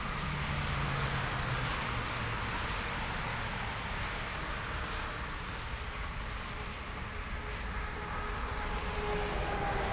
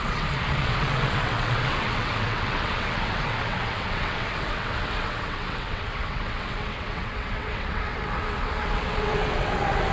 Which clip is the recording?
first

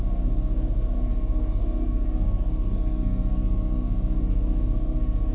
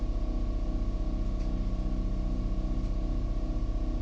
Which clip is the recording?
second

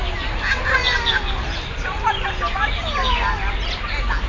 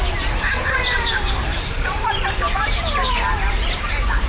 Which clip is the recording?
first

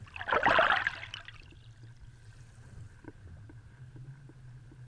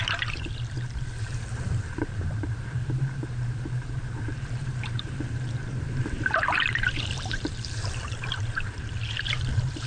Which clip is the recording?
first